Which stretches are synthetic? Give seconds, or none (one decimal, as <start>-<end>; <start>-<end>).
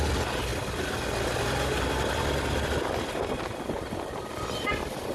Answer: none